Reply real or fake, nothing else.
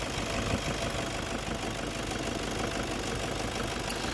real